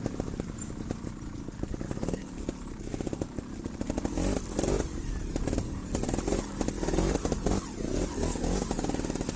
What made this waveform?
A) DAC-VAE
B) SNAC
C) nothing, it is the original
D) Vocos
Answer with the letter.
C